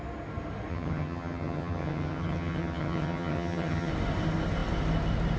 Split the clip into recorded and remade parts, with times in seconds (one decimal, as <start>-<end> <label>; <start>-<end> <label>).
0.0-0.7 recorded; 0.7-3.9 remade; 3.9-5.4 recorded